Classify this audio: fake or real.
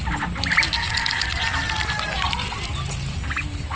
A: real